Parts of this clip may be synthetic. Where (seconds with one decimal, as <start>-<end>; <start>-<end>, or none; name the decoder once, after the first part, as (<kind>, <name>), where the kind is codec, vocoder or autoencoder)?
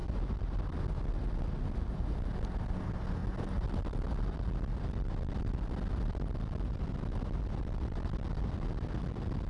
none